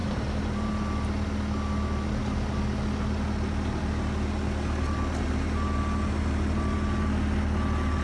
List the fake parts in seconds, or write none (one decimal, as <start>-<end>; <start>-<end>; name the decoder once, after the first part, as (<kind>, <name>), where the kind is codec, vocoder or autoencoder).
0.0-0.7 (vocoder, BigVGAN v2)

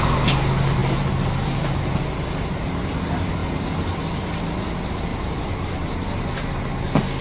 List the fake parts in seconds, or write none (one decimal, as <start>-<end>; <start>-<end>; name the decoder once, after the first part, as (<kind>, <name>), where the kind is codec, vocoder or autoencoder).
0.8-2.0 (vocoder, BigVGAN v2); 5.1-6.5

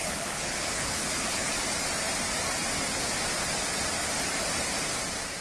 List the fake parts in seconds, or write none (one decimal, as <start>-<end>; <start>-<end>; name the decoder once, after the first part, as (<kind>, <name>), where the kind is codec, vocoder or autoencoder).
0.0-1.5 (codec, HILCodec)

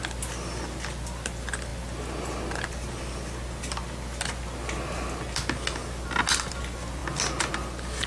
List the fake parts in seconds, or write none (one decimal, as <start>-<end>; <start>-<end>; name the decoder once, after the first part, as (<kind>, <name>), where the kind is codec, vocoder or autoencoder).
none

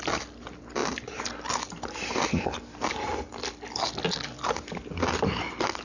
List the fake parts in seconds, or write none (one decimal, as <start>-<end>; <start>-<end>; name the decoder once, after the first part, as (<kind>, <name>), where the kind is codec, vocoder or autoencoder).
none

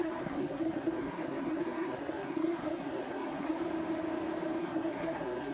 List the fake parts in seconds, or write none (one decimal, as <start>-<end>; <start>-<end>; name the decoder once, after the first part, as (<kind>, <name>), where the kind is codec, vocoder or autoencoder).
0.0-3.6 (codec, SNAC); 4.6-5.5

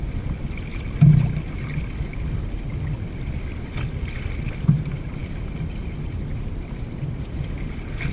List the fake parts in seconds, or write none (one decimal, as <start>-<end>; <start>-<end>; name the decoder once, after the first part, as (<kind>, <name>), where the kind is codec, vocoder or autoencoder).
none

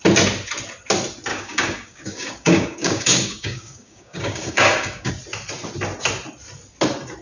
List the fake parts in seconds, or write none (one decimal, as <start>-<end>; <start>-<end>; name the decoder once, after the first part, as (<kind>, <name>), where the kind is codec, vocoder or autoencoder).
1.3-5.1 (codec, DAC)